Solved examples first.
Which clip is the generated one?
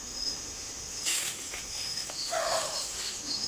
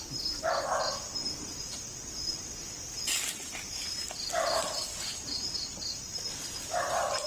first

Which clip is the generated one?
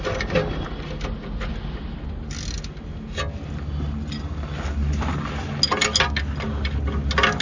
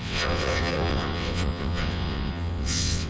second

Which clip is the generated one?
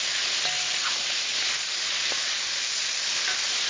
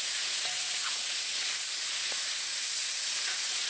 second